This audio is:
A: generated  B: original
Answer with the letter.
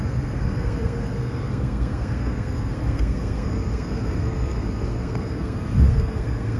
A